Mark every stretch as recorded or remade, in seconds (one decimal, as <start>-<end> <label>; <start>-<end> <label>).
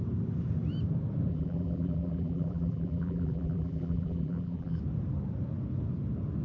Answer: 0.0-1.3 recorded; 1.3-4.8 remade; 4.8-6.4 recorded